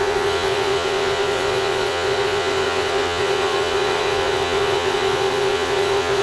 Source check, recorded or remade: remade